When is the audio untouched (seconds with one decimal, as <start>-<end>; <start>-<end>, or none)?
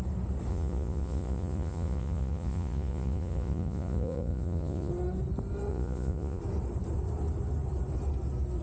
0.0-0.5; 4.9-5.7; 6.4-8.6